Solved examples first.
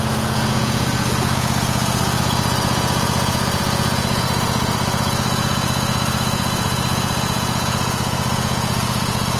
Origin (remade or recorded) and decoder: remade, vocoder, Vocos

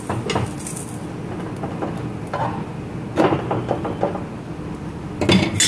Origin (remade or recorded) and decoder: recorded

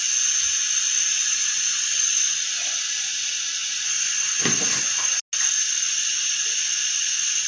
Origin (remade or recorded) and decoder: recorded